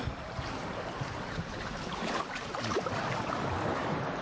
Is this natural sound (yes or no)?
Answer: yes